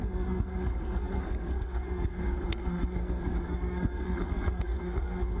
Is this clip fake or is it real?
fake